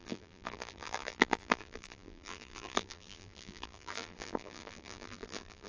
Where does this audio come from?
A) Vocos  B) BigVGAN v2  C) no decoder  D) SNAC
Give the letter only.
B